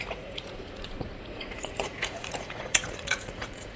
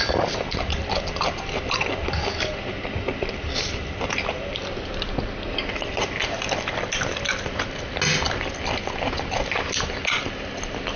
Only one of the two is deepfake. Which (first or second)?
first